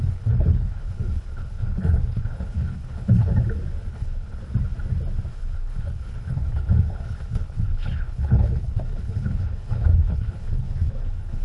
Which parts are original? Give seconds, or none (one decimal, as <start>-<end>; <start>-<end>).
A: 3.3-3.9; 4.4-5.3